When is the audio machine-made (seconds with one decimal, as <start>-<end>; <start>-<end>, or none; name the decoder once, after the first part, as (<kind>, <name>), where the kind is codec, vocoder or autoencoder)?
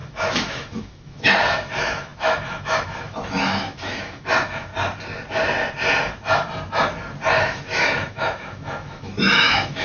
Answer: 0.0-4.7 (autoencoder, DAC-VAE); 7.4-9.8